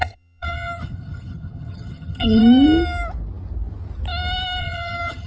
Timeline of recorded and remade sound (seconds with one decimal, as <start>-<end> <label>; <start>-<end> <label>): 0.0-2.4 remade; 2.4-4.6 recorded; 4.6-5.3 remade